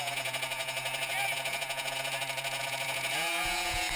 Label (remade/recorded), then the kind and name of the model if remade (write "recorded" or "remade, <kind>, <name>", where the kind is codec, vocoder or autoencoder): remade, vocoder, Vocos